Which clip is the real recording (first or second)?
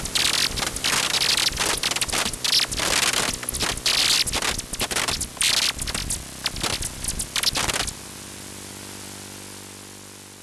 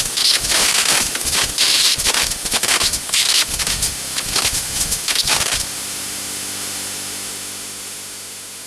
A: first